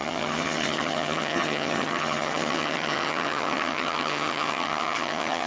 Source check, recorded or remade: remade